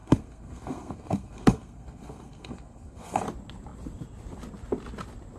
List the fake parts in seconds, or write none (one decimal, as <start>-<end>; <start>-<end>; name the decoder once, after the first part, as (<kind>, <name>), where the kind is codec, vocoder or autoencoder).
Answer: 0.0-3.2 (codec, SNAC)